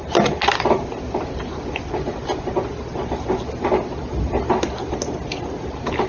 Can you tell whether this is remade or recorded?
recorded